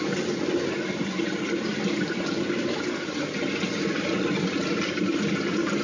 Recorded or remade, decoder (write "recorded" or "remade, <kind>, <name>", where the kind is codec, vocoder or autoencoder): recorded